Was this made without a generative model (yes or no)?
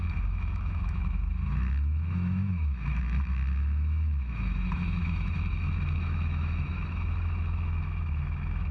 no